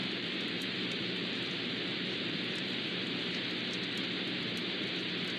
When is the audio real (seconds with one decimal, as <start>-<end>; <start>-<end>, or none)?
3.2-5.4